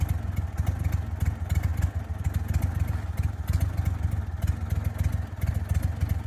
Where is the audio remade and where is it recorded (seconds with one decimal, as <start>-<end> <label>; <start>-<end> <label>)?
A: 0.0-6.3 recorded